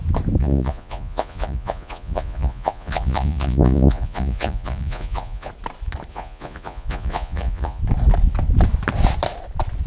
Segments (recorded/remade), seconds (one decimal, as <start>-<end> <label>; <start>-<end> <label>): 0.0-0.4 recorded; 0.4-5.5 remade; 5.5-6.1 recorded; 6.1-7.8 remade; 7.8-9.9 recorded